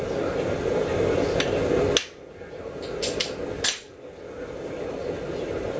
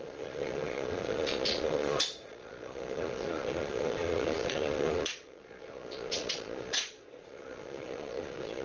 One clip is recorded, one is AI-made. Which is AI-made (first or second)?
second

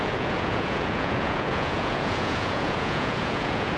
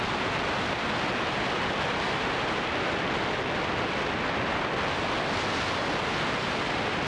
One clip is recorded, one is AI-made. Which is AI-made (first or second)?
first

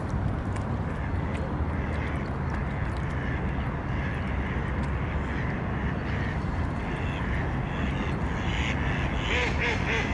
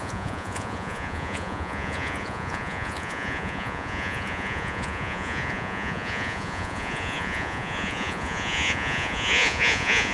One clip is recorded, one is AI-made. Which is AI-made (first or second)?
second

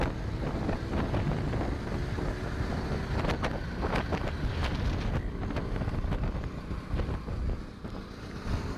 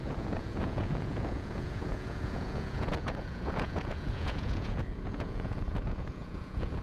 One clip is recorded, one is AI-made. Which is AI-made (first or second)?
second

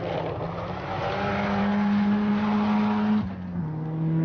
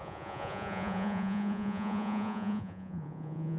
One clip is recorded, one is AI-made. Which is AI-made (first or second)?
second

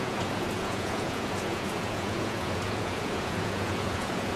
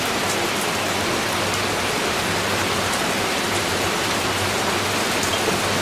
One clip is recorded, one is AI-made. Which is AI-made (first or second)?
first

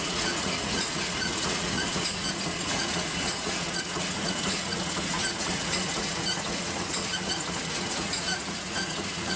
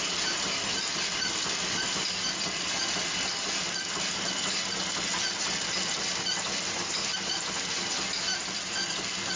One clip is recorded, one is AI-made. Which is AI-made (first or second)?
first